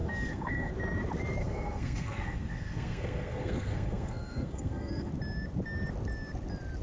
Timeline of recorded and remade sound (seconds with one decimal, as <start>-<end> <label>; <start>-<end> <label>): 0.0-0.7 remade; 0.7-1.4 recorded; 1.4-5.1 remade; 5.1-6.8 recorded